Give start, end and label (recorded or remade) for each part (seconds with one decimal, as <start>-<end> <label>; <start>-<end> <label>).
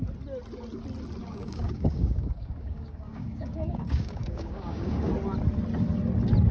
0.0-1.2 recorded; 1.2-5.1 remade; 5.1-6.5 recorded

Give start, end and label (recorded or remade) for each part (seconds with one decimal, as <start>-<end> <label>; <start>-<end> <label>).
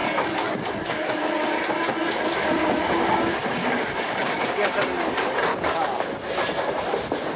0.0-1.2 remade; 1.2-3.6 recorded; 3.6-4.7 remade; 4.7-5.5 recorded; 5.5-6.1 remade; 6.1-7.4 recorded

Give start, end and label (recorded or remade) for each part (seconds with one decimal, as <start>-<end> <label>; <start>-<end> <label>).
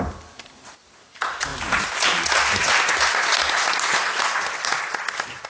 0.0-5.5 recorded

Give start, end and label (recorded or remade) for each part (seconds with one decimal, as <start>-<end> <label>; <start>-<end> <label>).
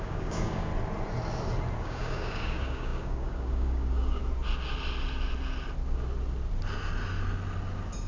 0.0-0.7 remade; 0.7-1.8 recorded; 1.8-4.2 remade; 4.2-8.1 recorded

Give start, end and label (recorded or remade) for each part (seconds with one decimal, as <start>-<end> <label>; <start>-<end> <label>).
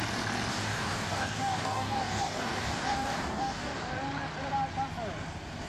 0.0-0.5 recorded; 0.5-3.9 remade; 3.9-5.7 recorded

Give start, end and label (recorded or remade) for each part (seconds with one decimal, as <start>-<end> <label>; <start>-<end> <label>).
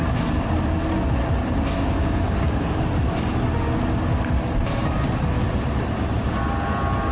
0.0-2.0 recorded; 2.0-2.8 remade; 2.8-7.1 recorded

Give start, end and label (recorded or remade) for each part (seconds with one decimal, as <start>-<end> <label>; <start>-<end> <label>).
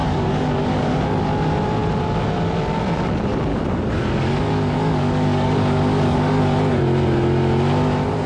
0.0-1.3 remade; 1.3-3.5 recorded; 3.5-6.4 remade; 6.4-8.3 recorded